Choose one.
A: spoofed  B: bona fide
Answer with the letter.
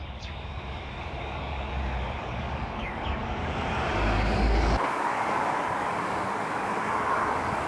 A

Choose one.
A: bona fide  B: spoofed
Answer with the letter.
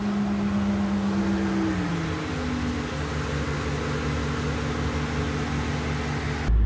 A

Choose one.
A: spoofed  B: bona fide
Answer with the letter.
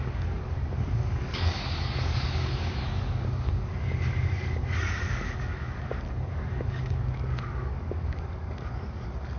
A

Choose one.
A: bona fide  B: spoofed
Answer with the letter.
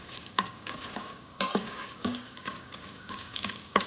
B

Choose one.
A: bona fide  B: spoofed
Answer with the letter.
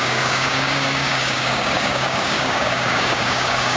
B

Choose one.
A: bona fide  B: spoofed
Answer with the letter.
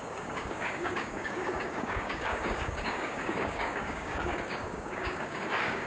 B